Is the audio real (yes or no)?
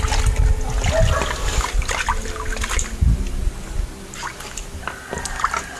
yes